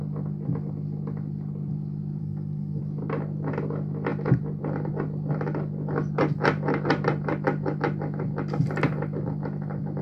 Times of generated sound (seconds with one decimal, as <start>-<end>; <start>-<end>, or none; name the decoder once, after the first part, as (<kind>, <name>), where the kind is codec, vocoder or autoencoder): 2.2-2.8 (codec, SNAC)